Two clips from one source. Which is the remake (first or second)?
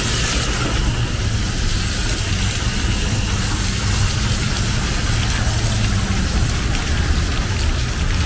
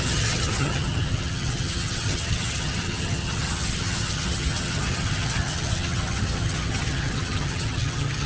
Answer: second